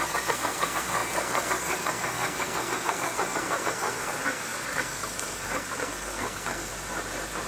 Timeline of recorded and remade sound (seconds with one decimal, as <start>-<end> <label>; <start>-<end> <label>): 0.0-6.7 remade; 6.7-7.5 recorded